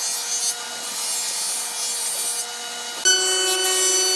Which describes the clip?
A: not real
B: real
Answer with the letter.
B